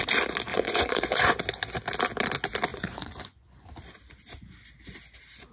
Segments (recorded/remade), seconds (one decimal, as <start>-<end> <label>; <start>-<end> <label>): 0.0-0.5 recorded; 0.5-1.4 remade; 1.4-2.7 recorded; 2.7-3.7 remade; 3.7-5.5 recorded